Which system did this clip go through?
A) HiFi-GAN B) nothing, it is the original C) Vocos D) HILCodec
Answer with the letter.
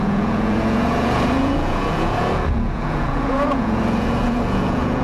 C